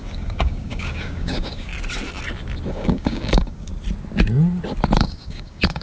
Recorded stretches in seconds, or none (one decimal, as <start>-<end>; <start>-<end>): 1.7-2.7; 3.7-5.0